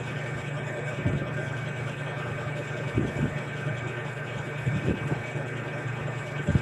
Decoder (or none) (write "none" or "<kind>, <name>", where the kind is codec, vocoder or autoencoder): codec, HILCodec